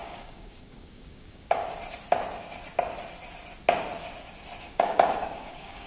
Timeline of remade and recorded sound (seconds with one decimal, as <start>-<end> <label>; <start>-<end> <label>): 0.0-1.6 remade; 1.6-4.6 recorded; 4.6-5.9 remade